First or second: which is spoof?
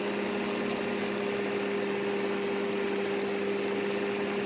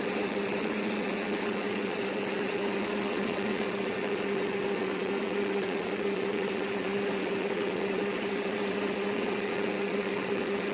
second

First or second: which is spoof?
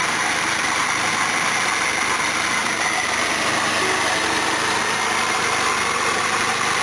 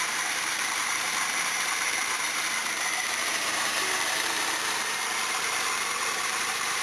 second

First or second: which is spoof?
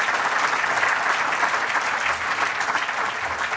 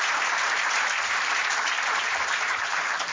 second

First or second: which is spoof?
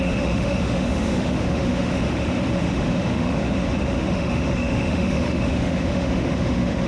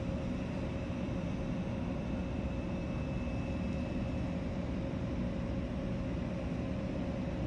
first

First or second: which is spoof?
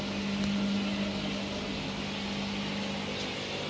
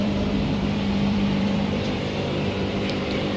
second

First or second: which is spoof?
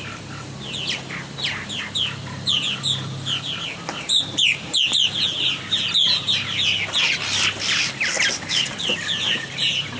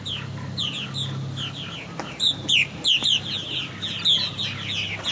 first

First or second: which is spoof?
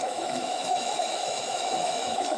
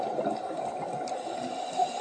first